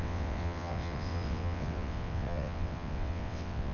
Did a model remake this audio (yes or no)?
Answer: yes